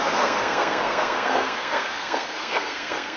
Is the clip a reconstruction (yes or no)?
yes